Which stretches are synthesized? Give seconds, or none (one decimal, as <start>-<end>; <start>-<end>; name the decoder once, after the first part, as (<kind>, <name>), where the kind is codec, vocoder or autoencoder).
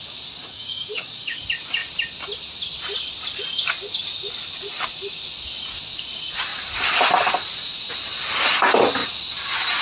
0.4-1.4 (codec, DAC)